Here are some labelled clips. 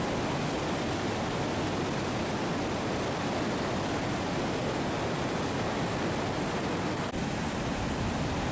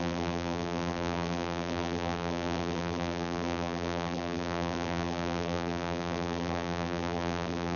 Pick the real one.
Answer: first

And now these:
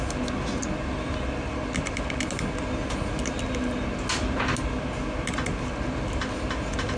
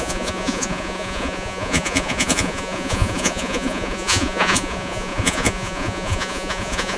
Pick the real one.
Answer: first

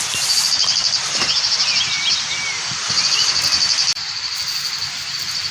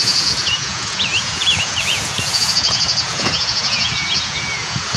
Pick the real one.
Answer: first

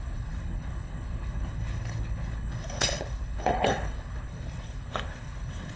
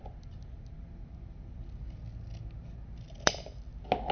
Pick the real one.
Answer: second